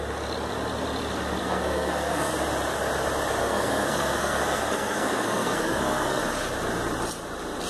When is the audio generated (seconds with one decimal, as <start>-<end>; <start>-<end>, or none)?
1.4-2.3; 3.4-6.2

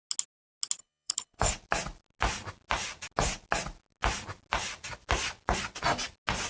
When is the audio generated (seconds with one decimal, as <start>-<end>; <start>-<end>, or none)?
0.8-1.5

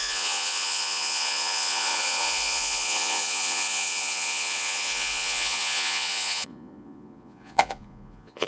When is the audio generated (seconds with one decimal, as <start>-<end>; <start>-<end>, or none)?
0.0-8.5

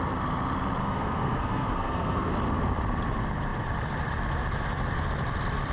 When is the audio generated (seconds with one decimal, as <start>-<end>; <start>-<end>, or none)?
0.8-2.3

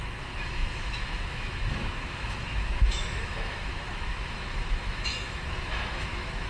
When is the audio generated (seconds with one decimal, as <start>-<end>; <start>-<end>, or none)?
0.0-6.5

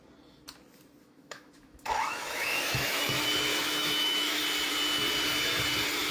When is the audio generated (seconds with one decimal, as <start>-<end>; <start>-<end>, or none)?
1.0-3.0; 3.5-4.4